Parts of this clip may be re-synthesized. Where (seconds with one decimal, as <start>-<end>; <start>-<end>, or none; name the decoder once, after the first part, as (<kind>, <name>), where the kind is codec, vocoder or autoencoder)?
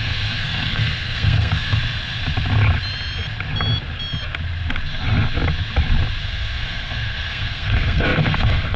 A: 0.0-1.8 (codec, SNAC); 6.2-8.8